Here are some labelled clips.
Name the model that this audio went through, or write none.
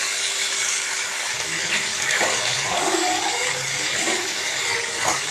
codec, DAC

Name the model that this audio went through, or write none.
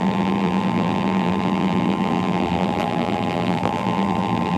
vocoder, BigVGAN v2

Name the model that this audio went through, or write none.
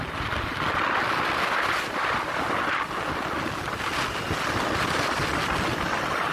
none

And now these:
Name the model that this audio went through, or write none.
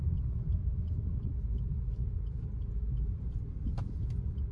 none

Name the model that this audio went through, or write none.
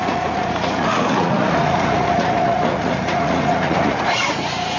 vocoder, Vocos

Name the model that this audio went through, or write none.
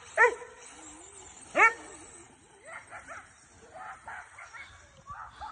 none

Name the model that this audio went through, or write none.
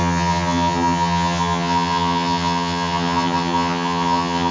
vocoder, HiFi-GAN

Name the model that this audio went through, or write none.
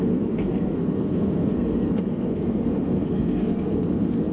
codec, SNAC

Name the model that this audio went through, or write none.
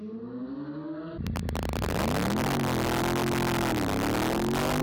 none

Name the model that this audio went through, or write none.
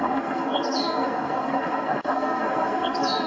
codec, SNAC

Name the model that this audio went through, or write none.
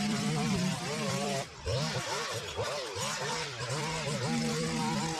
vocoder, BigVGAN v2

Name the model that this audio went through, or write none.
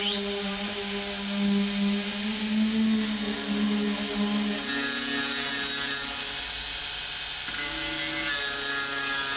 none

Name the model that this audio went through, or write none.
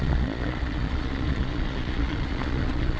vocoder, Vocos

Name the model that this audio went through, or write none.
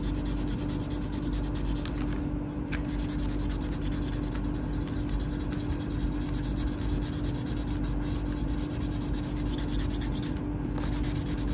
none